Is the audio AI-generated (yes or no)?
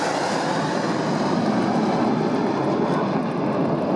no